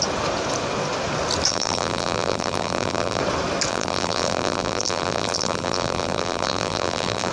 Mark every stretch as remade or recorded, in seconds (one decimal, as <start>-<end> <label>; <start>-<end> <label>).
0.0-1.5 recorded; 1.5-3.2 remade; 3.2-3.7 recorded; 3.7-7.3 remade